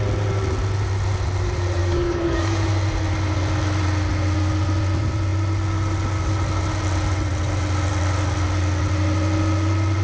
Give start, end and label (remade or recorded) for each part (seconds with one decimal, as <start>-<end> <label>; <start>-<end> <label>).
0.0-1.8 recorded; 1.8-2.7 remade; 2.7-10.0 recorded